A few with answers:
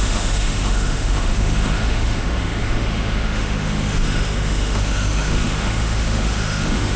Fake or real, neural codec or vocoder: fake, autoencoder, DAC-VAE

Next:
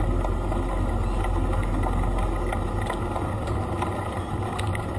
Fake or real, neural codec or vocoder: real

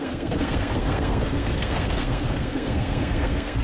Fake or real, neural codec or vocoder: fake, codec, SNAC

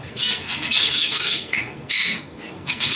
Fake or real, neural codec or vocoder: fake, codec, SNAC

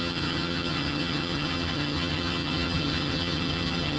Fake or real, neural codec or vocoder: fake, vocoder, HiFi-GAN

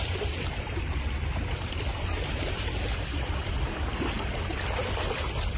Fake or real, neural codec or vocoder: fake, vocoder, BigVGAN v2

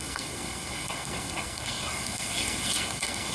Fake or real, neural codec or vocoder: fake, codec, SNAC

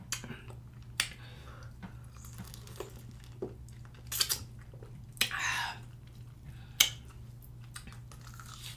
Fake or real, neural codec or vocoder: real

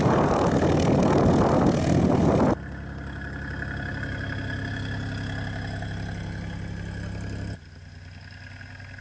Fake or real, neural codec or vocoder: real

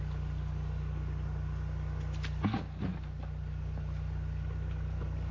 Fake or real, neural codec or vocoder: real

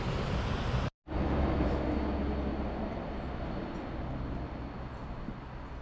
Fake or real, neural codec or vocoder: real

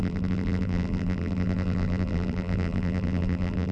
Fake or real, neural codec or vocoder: fake, vocoder, BigVGAN v2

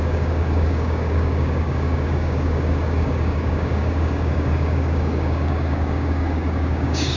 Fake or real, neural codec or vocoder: fake, codec, DAC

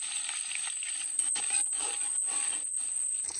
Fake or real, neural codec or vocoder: real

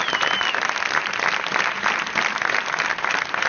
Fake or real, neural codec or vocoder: real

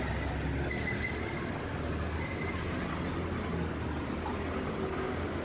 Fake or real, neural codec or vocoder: real